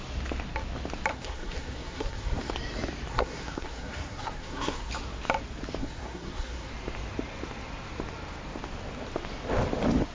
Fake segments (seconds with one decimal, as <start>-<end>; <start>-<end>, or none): 1.1-2.4; 3.1-4.9; 5.8-6.7